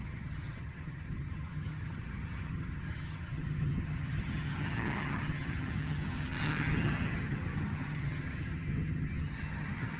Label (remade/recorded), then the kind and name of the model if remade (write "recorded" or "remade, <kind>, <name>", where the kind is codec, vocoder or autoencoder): remade, vocoder, HiFi-GAN